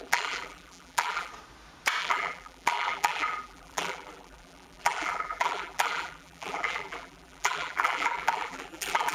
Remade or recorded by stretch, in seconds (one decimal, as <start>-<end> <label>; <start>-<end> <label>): 0.0-1.3 remade; 1.3-2.0 recorded; 2.0-9.1 remade